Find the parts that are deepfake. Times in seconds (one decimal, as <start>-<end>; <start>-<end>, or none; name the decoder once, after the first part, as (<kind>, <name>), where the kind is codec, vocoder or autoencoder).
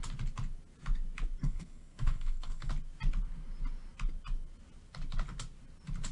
1.4-2.7 (codec, SNAC)